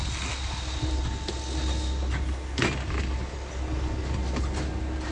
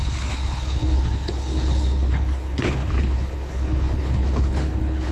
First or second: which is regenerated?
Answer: second